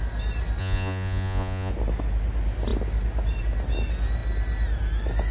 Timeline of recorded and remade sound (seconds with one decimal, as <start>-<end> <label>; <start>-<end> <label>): 0.0-0.6 recorded; 0.6-1.7 remade; 1.7-5.3 recorded